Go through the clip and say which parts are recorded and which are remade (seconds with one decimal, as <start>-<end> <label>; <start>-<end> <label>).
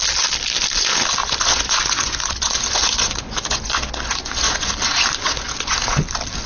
0.0-1.2 recorded; 1.2-4.7 remade; 4.7-5.2 recorded; 5.2-6.0 remade; 6.0-6.5 recorded